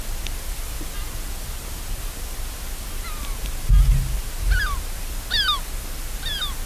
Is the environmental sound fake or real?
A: real